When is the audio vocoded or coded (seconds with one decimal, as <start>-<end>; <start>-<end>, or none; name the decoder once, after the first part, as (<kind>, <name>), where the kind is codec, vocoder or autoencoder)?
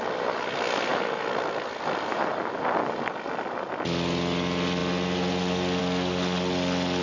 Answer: none